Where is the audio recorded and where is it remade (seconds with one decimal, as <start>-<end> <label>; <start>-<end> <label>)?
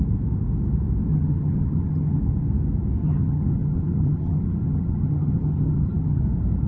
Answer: 0.0-1.1 recorded; 1.1-2.2 remade; 2.2-3.0 recorded; 3.0-6.2 remade; 6.2-6.7 recorded